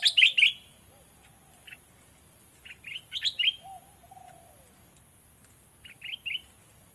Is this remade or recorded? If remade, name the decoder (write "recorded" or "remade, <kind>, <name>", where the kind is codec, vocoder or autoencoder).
recorded